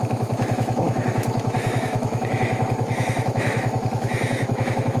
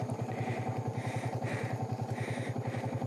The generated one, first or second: first